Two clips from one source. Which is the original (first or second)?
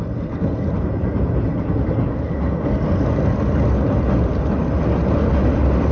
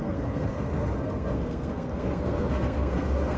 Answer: first